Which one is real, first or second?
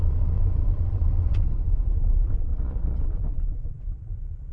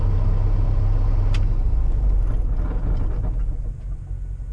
second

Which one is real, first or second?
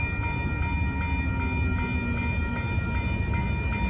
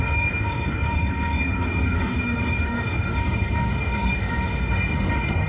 first